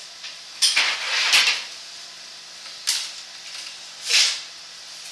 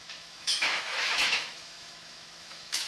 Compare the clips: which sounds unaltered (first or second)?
first